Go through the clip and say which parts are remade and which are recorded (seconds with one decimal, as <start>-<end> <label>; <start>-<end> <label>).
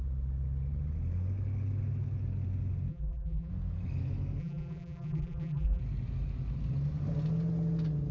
0.0-2.9 recorded; 2.9-3.5 remade; 3.5-4.4 recorded; 4.4-5.8 remade; 5.8-8.1 recorded